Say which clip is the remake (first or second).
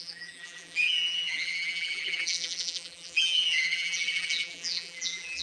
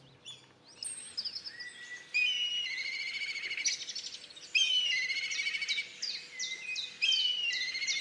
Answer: first